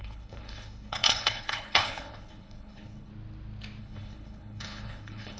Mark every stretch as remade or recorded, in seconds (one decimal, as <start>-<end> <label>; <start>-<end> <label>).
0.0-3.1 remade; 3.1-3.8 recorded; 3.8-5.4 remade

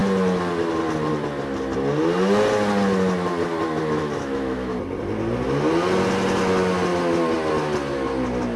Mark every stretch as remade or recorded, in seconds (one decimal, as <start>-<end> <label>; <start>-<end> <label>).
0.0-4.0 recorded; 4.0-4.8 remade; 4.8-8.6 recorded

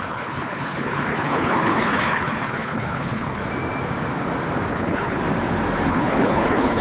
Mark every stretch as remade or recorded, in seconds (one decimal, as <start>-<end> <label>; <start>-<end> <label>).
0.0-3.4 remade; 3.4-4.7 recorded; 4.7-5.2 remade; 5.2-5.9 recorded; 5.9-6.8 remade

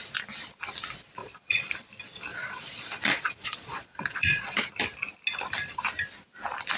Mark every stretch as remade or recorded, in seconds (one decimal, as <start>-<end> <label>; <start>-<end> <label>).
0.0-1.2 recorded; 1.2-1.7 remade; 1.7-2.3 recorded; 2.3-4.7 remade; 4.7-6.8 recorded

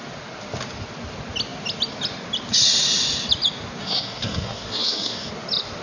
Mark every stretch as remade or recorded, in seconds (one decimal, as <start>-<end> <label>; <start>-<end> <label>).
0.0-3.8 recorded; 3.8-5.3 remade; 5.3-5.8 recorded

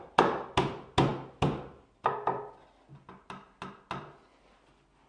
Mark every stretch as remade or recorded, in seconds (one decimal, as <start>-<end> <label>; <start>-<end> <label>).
0.0-5.1 recorded